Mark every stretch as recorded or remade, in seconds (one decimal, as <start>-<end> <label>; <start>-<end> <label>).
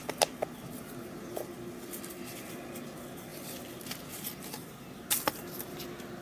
0.0-6.2 recorded